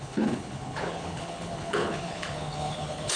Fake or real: fake